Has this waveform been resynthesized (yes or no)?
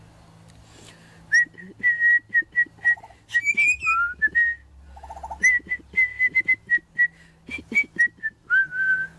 no